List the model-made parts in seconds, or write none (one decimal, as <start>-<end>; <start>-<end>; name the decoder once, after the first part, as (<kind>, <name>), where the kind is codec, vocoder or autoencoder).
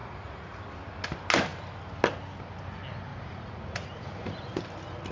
0.0-0.6 (vocoder, Vocos); 3.1-4.6